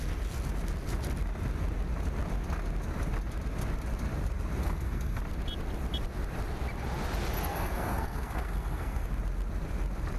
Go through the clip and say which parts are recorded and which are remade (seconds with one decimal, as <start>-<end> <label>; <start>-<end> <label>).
0.0-4.6 recorded; 4.6-5.2 remade; 5.2-7.5 recorded; 7.5-9.2 remade; 9.2-10.2 recorded